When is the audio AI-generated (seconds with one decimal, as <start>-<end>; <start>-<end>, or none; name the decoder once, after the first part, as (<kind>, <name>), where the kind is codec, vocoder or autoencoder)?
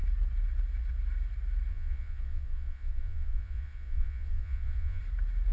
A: 1.7-5.0 (vocoder, Vocos)